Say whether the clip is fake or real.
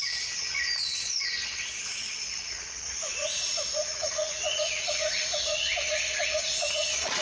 fake